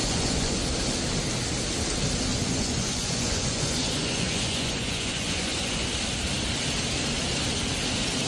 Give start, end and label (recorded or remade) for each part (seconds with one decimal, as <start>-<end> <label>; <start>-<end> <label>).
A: 0.0-0.6 remade; 0.6-2.3 recorded; 2.3-5.9 remade; 5.9-8.3 recorded